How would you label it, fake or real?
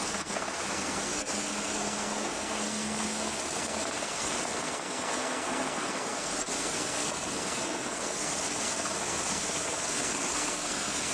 fake